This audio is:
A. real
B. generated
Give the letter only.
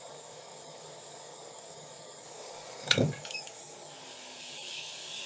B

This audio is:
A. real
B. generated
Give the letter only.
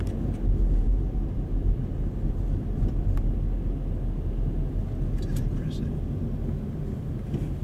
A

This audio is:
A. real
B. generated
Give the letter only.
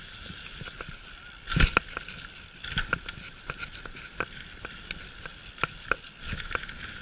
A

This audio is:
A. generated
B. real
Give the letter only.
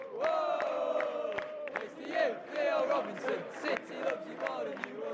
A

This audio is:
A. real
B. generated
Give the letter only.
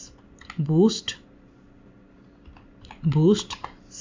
A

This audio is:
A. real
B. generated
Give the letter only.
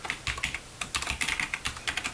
A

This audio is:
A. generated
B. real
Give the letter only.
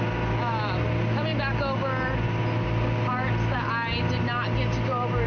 B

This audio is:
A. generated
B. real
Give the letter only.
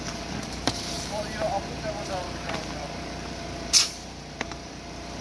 A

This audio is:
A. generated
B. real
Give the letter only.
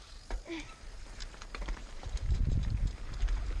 A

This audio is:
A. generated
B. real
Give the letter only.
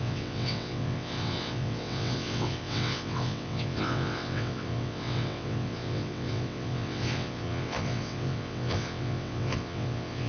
A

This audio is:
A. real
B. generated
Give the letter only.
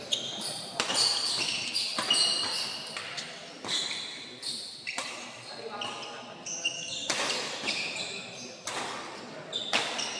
A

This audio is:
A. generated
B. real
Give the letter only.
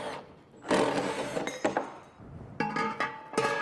B